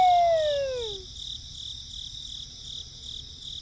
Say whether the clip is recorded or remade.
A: recorded